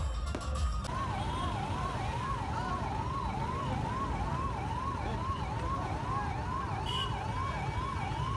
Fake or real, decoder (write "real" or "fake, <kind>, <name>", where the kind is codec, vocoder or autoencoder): real